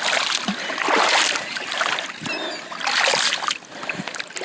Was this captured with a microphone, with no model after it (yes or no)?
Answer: yes